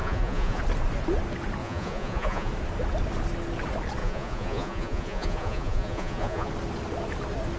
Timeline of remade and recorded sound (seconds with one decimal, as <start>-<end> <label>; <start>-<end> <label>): 0.0-0.6 remade; 0.6-1.6 recorded; 1.6-2.5 remade; 2.5-4.0 recorded; 4.0-6.5 remade; 6.5-7.6 recorded